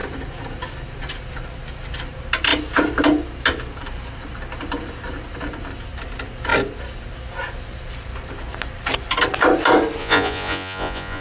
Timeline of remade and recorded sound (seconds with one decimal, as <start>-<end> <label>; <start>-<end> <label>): 0.0-10.0 recorded; 10.0-11.2 remade

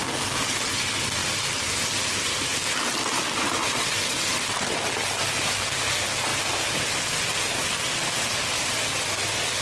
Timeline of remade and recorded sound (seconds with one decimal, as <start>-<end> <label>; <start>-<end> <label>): 0.0-9.6 recorded